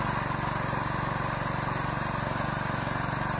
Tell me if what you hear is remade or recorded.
recorded